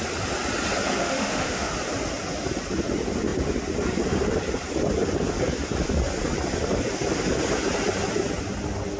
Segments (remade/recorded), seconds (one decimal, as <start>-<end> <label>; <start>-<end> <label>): 0.0-1.0 recorded; 1.0-1.7 remade; 1.7-9.0 recorded